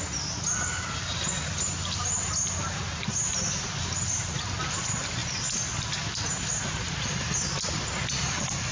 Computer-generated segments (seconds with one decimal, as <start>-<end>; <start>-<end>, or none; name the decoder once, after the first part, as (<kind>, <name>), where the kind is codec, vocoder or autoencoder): none